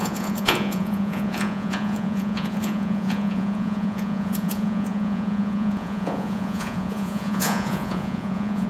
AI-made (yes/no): yes